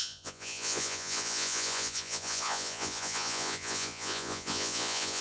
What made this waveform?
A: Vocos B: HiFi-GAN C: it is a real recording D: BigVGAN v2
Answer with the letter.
A